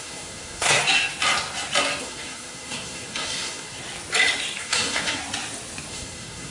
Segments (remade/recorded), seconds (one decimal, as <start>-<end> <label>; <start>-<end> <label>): 0.0-0.8 remade; 0.8-2.0 recorded; 2.0-3.8 remade; 3.8-4.6 recorded; 4.6-5.2 remade; 5.2-5.9 recorded; 5.9-6.5 remade